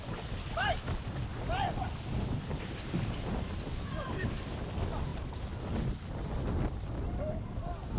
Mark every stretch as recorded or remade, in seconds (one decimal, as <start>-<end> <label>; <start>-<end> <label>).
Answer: 0.0-1.3 recorded; 1.3-4.6 remade; 4.6-5.1 recorded; 5.1-5.6 remade; 5.6-8.0 recorded